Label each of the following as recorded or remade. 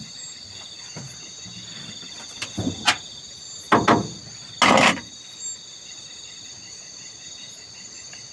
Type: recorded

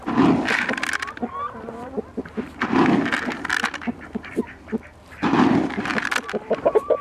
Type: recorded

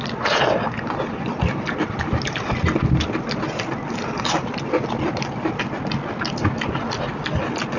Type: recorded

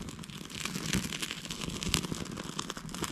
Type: recorded